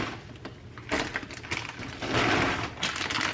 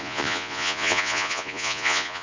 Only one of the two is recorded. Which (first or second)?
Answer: first